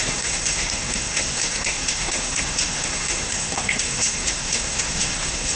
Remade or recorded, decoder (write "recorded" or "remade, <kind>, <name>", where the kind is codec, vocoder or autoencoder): remade, codec, SNAC